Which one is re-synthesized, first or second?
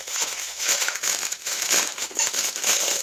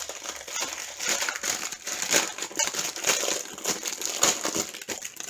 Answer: first